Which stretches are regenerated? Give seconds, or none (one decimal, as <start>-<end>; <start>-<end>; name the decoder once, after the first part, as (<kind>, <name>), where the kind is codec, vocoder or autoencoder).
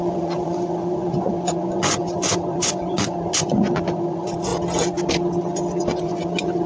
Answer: 0.0-4.5 (vocoder, Vocos); 5.9-6.7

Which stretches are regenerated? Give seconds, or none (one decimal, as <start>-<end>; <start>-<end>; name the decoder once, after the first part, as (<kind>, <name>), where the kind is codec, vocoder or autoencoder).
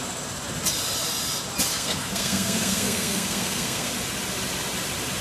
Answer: 1.7-3.9 (codec, SNAC)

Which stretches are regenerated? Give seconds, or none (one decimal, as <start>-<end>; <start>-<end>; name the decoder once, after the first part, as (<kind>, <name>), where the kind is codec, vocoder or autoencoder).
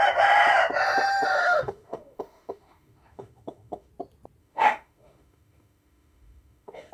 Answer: 1.4-3.9 (autoencoder, DAC-VAE); 4.4-6.9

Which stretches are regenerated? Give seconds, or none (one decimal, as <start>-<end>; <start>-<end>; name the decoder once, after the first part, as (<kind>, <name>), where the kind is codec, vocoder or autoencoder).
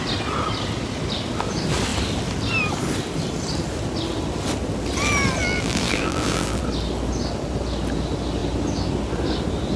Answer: 5.4-6.6 (vocoder, BigVGAN v2)